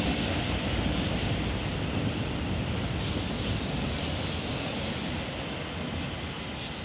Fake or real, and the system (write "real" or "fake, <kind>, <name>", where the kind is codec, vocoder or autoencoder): real